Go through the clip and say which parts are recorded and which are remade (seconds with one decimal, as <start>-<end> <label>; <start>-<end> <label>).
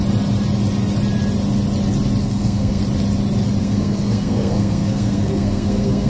0.0-2.2 recorded; 2.2-2.8 remade; 2.8-3.6 recorded; 3.6-6.1 remade